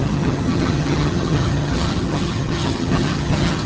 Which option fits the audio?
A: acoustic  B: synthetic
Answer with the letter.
B